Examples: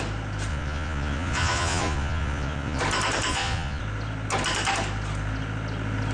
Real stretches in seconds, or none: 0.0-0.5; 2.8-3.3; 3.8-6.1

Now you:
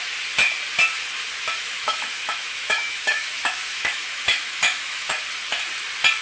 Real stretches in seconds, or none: 0.0-1.6; 5.1-6.2

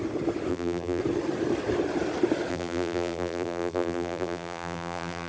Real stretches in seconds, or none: 0.0-0.5; 1.0-2.5

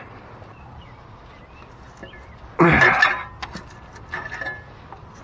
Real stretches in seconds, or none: 0.0-5.2

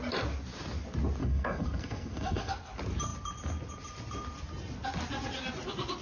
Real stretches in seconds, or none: 0.0-1.2; 2.5-6.0

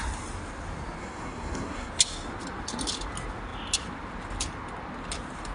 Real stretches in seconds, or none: 0.0-1.0; 1.9-5.5